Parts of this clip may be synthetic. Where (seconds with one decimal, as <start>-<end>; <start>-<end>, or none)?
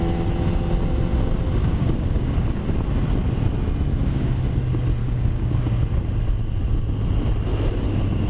1.6-2.6; 3.9-4.4; 5.0-5.6